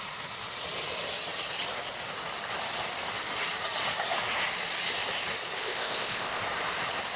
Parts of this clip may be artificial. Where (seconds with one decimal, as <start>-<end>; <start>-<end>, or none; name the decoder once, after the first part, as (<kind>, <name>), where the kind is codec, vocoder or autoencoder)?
5.6-6.4 (codec, ZipCodec)